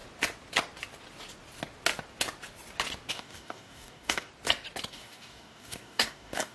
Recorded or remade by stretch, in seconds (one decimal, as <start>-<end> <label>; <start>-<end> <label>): 0.0-3.1 recorded; 3.1-4.3 remade; 4.3-4.9 recorded; 4.9-6.5 remade